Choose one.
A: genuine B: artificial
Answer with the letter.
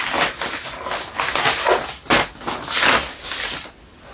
A